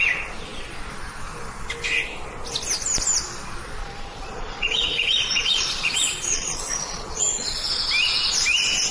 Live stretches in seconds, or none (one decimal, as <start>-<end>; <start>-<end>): 0.0-3.8; 7.7-8.9